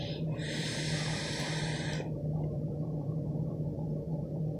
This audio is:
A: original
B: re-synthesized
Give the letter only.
B